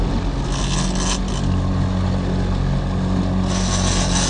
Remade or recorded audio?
recorded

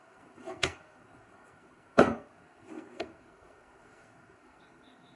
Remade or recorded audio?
remade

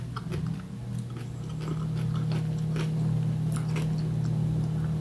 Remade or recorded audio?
recorded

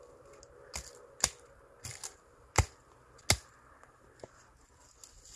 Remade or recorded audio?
recorded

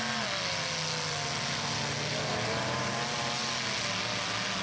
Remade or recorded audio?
recorded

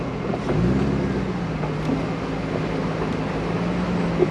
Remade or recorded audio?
recorded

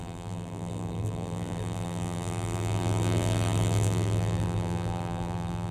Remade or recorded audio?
remade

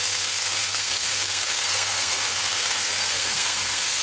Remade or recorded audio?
remade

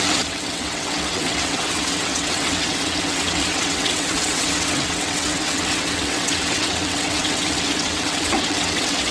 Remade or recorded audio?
remade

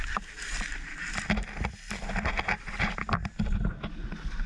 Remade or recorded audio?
recorded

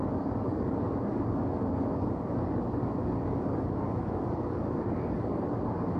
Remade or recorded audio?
remade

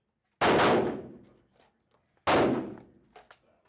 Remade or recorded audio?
recorded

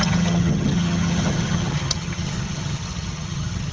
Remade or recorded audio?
remade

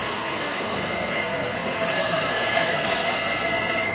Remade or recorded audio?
remade